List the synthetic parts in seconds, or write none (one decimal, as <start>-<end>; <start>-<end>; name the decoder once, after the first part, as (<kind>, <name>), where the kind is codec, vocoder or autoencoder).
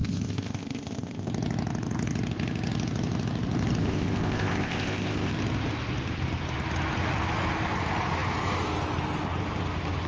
0.0-1.3 (codec, ZipCodec); 3.8-5.3